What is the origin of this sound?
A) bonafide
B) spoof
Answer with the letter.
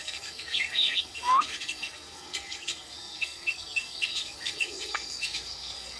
B